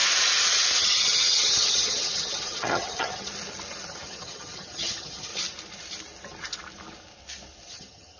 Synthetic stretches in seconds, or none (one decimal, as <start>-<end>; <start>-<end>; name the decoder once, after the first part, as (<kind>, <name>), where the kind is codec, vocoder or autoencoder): 0.8-3.3 (vocoder, HiFi-GAN); 3.9-5.3; 7.7-8.2